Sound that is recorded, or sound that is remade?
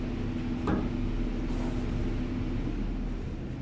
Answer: recorded